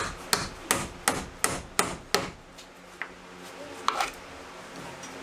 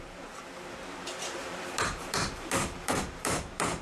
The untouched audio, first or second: first